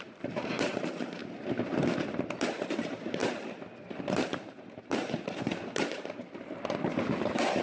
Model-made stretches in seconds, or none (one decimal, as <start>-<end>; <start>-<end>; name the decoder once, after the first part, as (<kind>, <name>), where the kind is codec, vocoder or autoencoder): 0.0-1.2 (vocoder, BigVGAN v2); 2.0-3.2; 4.0-7.6